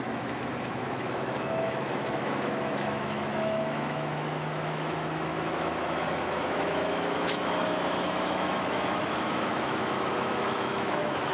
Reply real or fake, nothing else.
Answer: fake